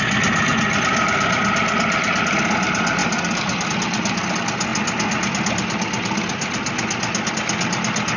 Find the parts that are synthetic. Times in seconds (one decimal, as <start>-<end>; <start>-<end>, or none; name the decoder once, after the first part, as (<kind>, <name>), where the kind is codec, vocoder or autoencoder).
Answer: none